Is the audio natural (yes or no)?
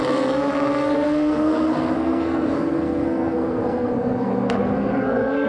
no